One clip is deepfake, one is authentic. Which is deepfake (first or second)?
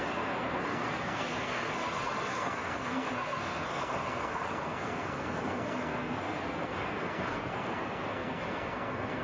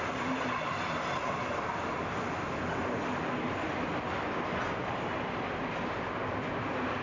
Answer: first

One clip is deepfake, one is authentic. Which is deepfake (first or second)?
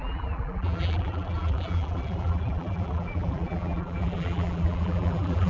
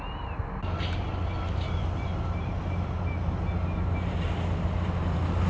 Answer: first